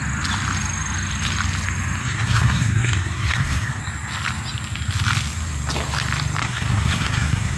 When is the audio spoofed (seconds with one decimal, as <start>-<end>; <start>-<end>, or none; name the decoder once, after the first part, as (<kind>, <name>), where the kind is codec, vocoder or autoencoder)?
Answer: 2.0-3.8 (codec, SNAC); 6.4-7.6

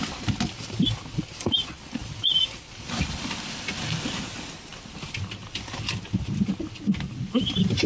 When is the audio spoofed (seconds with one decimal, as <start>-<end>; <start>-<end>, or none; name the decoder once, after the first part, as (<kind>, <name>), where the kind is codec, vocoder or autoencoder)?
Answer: none

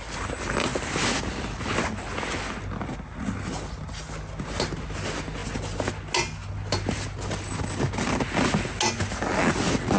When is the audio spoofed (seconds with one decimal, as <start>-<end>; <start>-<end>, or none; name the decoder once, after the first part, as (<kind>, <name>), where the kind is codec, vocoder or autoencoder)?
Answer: none

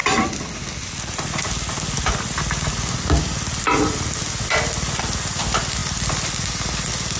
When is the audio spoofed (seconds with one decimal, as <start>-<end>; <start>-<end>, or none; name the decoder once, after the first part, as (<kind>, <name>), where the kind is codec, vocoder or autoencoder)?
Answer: none

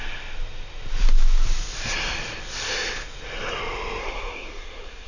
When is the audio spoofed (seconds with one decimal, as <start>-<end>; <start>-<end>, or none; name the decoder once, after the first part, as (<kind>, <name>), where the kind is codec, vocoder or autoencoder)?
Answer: 4.0-5.1 (codec, SNAC)

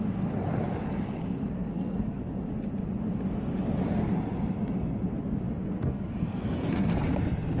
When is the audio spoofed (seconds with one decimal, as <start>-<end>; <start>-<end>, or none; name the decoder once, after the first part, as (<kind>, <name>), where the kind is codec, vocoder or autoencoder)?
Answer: 1.5-2.2 (codec, SNAC); 5.5-6.9